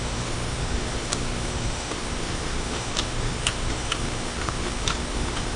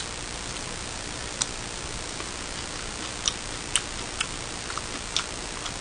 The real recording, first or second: second